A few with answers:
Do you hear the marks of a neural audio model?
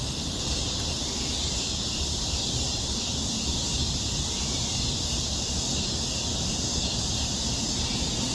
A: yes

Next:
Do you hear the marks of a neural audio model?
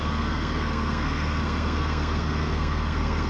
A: yes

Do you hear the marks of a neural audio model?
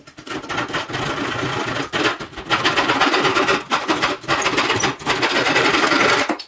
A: no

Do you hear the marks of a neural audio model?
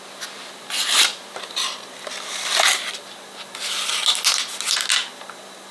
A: no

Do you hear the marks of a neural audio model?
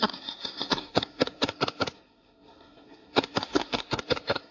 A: yes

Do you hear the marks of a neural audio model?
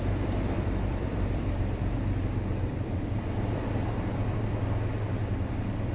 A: yes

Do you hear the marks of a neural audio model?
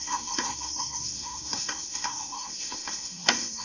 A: yes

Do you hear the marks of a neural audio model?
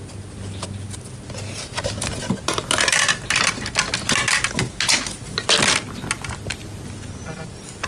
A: no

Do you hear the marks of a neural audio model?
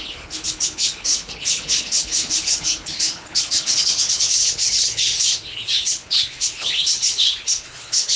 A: yes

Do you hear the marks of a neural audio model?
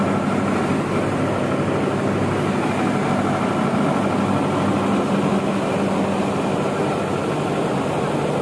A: no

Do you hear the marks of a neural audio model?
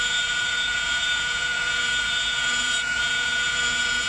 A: yes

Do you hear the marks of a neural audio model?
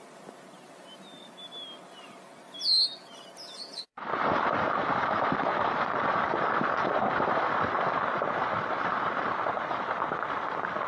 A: no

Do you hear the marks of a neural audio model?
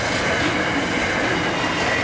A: no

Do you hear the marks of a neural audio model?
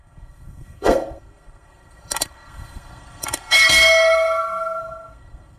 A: yes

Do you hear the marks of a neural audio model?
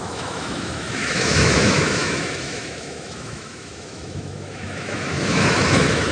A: yes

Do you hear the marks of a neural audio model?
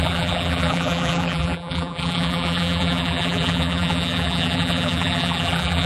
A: yes